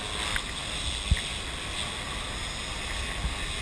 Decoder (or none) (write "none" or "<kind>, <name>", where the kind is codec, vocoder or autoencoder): none